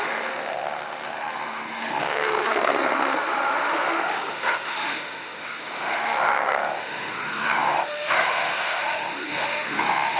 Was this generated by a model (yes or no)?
yes